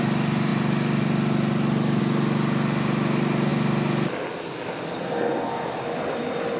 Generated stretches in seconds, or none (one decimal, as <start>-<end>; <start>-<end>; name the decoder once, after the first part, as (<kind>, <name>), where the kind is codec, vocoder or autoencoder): none